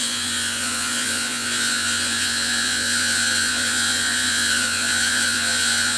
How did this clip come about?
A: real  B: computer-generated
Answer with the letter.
B